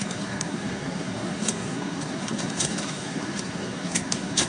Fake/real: fake